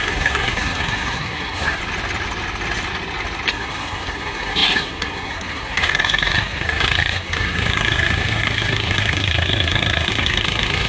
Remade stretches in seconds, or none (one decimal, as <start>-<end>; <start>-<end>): 0.0-1.8; 3.5-10.9